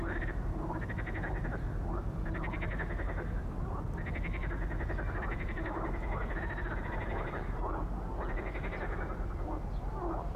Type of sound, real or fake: real